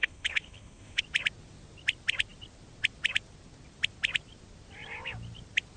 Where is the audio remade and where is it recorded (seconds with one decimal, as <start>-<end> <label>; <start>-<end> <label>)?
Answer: 0.0-1.0 remade; 1.0-5.8 recorded